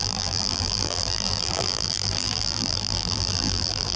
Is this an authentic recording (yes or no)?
no